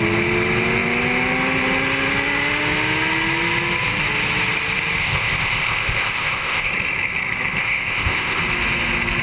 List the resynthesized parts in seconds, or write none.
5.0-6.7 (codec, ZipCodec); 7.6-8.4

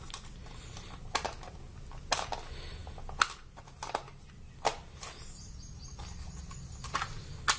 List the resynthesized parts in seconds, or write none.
none

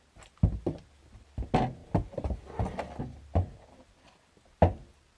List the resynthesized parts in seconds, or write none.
none

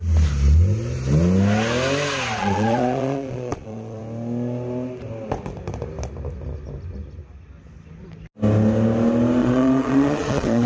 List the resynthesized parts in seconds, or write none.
2.4-4.0 (vocoder, Vocos); 9.4-10.7